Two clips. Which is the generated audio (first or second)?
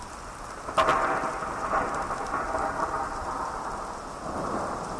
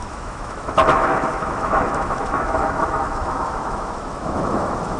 second